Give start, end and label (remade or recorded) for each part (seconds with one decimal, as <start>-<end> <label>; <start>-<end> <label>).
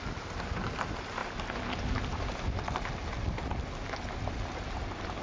0.0-5.2 recorded